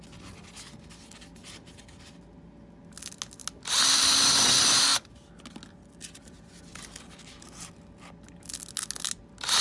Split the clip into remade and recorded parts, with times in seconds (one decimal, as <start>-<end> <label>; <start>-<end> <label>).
0.0-9.6 recorded